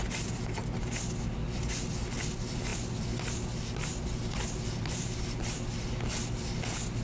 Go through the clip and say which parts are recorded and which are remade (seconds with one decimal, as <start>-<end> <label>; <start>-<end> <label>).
0.0-7.0 recorded